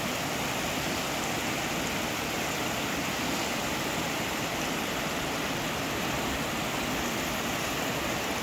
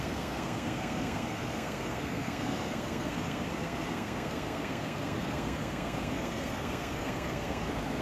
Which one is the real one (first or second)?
first